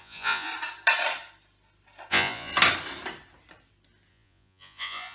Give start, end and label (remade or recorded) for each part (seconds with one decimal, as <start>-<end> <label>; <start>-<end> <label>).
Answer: 0.0-0.5 remade; 0.5-2.1 recorded; 2.1-2.5 remade; 2.5-4.1 recorded; 4.1-5.1 remade